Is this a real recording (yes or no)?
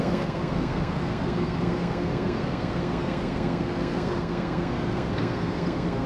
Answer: no